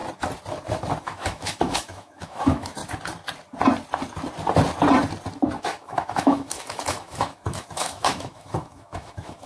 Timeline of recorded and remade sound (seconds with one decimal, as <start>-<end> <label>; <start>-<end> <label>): 0.0-1.0 recorded; 1.0-2.8 remade; 2.8-5.6 recorded; 5.6-9.5 remade